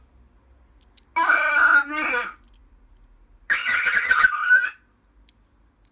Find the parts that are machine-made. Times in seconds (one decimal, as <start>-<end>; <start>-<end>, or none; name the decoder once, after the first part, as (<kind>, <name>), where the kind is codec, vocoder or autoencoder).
3.6-4.5 (vocoder, HiFi-GAN)